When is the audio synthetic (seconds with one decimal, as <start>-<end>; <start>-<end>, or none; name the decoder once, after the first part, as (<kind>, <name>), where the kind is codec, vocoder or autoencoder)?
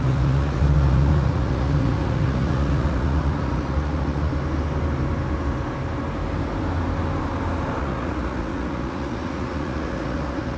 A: 0.0-4.3 (vocoder, Vocos); 7.8-10.6